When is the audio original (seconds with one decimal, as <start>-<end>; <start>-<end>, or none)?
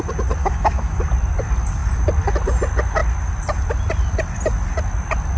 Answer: 0.0-0.4; 1.0-5.4